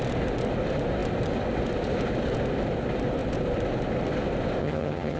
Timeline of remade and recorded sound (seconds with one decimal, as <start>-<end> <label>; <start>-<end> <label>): 0.0-4.6 recorded; 4.6-5.2 remade